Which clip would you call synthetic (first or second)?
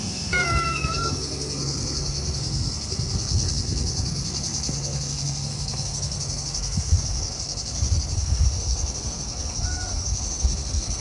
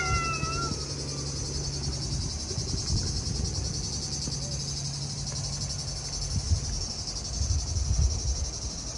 first